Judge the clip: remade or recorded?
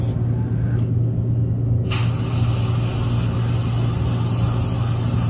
recorded